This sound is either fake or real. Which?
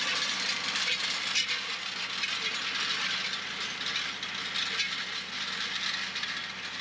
real